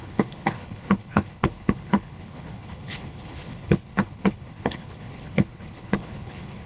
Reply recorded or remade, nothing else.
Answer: remade